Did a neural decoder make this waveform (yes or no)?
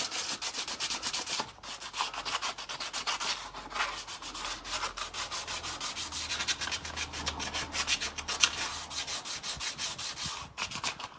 no